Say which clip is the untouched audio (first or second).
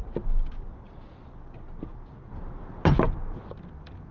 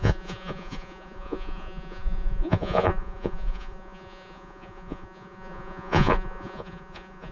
first